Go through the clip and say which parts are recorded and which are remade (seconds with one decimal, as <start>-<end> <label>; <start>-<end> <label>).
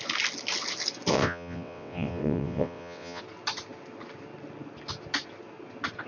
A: 0.0-1.1 recorded; 1.1-3.2 remade; 3.2-6.1 recorded